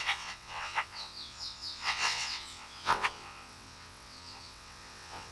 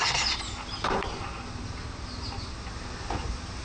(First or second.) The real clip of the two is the second